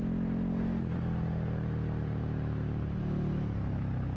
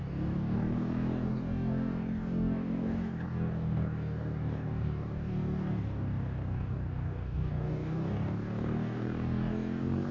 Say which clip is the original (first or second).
first